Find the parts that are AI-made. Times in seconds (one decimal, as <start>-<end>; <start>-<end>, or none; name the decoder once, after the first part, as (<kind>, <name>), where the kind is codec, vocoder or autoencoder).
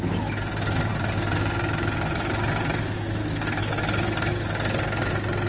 none